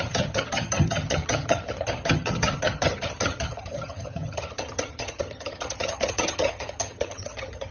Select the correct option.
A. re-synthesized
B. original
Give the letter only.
A